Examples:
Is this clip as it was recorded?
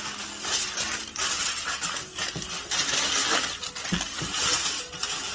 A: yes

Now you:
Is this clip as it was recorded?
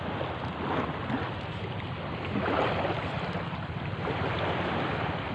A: yes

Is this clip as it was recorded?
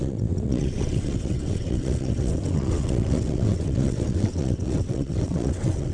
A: no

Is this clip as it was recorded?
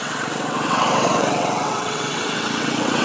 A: no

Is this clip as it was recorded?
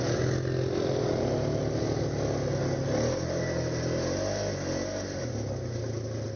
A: yes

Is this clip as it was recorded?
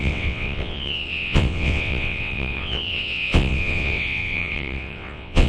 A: no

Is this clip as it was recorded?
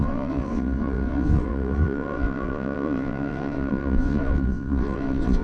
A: no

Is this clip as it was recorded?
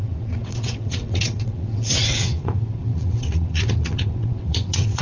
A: no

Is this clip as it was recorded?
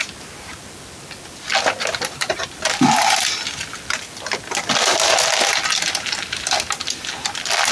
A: yes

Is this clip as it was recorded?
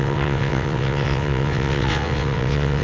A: no